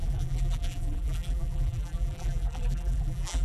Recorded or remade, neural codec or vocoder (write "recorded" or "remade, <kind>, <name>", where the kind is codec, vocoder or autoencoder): remade, vocoder, BigVGAN v2